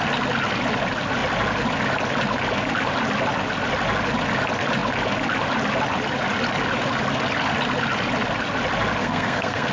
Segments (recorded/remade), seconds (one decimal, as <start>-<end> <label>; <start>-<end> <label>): 0.0-9.0 recorded; 9.0-9.7 remade